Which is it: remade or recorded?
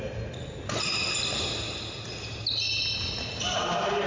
recorded